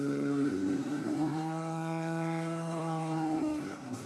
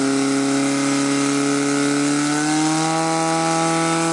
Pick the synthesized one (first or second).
first